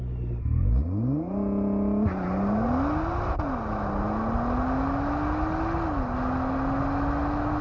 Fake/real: real